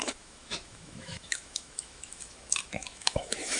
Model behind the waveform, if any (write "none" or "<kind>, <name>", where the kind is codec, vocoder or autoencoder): autoencoder, DAC-VAE